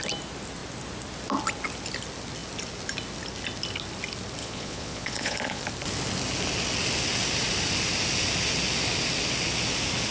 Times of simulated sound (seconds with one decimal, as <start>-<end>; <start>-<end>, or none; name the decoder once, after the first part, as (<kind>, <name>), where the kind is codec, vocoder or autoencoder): 4.4-5.6 (vocoder, Vocos)